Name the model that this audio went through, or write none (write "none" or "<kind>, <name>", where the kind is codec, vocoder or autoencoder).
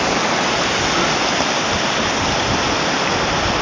none